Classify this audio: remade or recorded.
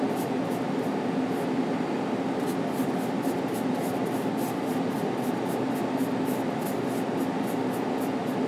recorded